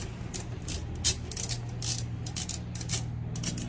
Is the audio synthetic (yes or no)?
no